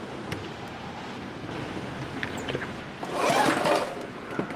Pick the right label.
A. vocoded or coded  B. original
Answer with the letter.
B